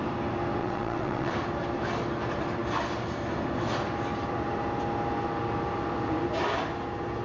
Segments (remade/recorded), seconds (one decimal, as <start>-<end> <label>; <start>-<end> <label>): 0.0-0.6 recorded; 0.6-1.3 remade; 1.3-7.2 recorded